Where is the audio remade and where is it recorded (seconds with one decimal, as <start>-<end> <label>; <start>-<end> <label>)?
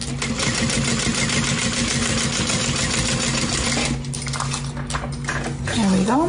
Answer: 0.0-6.3 recorded